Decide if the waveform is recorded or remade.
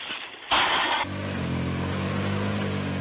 recorded